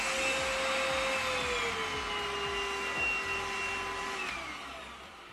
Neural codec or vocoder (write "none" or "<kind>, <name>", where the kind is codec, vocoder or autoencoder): none